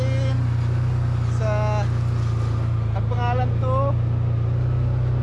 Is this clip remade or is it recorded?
recorded